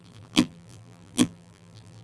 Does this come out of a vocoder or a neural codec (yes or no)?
yes